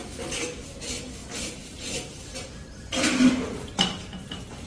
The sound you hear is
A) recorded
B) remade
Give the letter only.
A